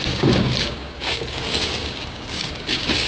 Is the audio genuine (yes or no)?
no